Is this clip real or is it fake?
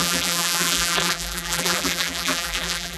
fake